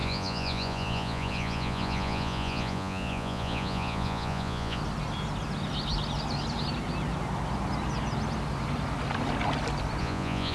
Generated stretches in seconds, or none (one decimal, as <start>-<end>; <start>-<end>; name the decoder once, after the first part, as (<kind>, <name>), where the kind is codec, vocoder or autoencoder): 0.0-4.8 (vocoder, Vocos); 10.0-10.5